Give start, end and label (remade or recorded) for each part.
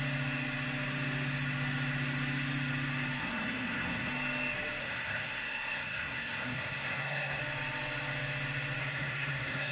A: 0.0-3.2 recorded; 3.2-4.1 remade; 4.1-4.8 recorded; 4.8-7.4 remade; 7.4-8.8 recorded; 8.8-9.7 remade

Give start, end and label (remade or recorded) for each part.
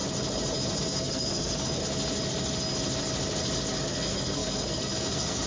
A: 0.0-0.8 recorded; 0.8-1.8 remade; 1.8-3.8 recorded; 3.8-5.5 remade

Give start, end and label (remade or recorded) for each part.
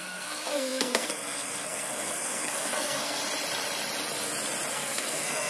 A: 0.0-3.2 remade; 3.2-4.7 recorded; 4.7-5.5 remade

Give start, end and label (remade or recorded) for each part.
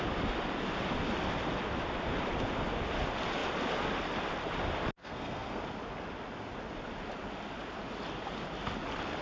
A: 0.0-5.0 recorded; 5.0-5.6 remade; 5.6-9.2 recorded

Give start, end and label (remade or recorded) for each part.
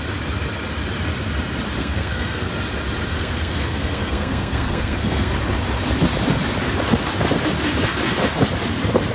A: 0.0-1.8 recorded; 1.8-2.5 remade; 2.5-3.1 recorded; 3.1-5.3 remade; 5.3-9.1 recorded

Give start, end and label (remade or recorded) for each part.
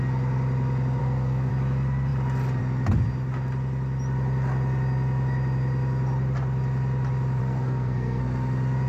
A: 0.0-1.0 recorded; 1.0-1.5 remade; 1.5-7.4 recorded; 7.4-8.2 remade; 8.2-8.9 recorded